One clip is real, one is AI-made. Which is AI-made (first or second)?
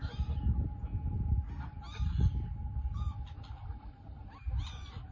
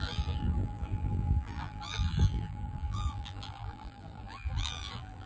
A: second